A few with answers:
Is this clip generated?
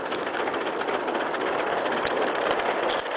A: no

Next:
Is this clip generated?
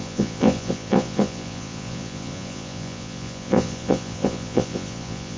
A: yes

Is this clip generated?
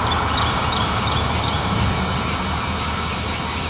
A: no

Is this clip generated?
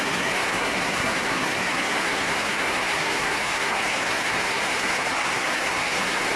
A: yes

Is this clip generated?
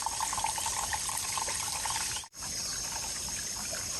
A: yes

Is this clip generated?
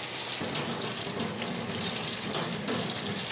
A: no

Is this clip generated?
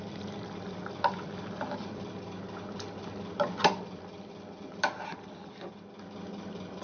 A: no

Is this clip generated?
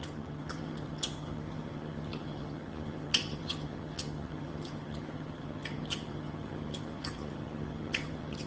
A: yes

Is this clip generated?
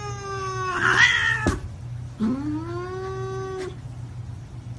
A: no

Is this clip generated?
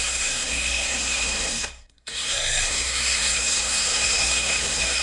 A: yes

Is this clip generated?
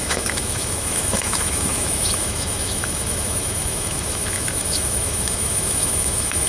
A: yes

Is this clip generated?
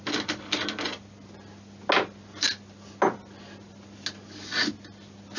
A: no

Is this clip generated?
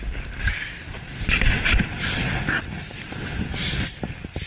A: no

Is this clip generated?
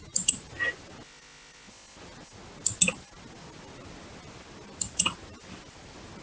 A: no